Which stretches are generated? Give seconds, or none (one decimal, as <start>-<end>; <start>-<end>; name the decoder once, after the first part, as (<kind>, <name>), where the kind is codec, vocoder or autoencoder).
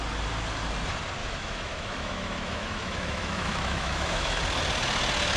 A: 1.2-4.4 (autoencoder, DAC-VAE)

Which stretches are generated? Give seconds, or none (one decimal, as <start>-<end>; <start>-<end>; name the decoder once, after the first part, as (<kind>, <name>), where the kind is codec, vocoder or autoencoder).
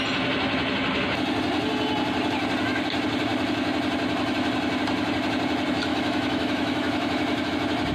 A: 5.9-7.5 (autoencoder, DAC-VAE)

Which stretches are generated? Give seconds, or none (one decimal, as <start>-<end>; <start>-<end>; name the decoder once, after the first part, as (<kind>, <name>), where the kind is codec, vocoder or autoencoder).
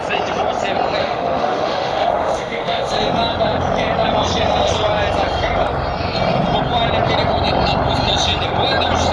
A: 1.0-2.9 (autoencoder, DAC-VAE)